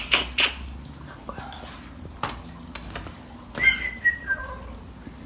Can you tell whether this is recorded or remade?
recorded